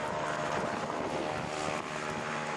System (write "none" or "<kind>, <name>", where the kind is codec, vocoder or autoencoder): none